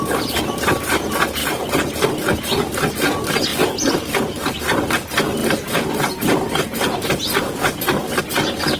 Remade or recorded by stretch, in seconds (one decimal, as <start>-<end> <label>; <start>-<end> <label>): 0.0-1.4 recorded; 1.4-2.1 remade; 2.1-5.4 recorded; 5.4-8.2 remade; 8.2-8.8 recorded